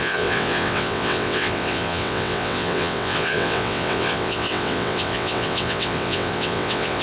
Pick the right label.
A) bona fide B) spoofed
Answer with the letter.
B